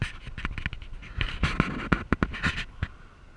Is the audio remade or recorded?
recorded